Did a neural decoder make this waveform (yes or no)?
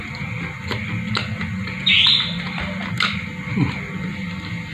no